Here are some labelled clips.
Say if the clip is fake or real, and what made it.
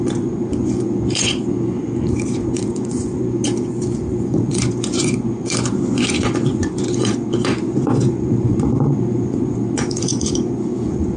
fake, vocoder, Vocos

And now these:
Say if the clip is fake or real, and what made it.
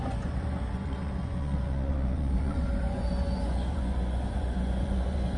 fake, vocoder, Vocos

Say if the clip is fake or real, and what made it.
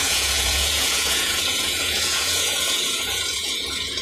fake, vocoder, Vocos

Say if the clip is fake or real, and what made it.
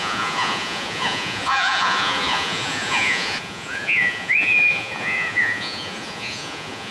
fake, vocoder, Vocos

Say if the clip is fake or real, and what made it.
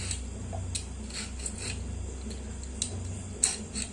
real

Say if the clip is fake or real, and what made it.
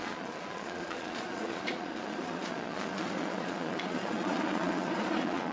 fake, vocoder, Vocos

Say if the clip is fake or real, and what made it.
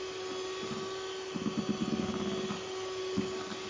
real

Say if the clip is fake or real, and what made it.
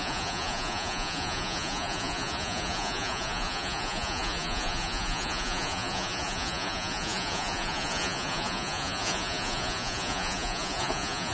fake, vocoder, Vocos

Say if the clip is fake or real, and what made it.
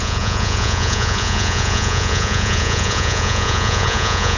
fake, vocoder, Vocos